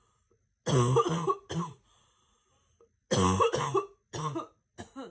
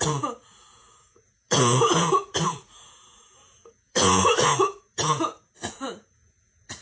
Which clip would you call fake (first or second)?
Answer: second